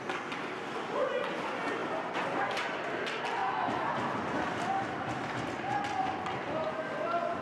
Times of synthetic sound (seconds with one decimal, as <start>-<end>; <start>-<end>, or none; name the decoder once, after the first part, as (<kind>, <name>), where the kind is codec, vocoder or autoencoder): 1.8-2.9 (vocoder, BigVGAN v2); 3.4-4.6